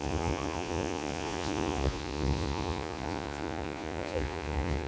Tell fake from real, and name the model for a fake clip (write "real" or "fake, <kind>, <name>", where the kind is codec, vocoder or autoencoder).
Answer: fake, vocoder, Vocos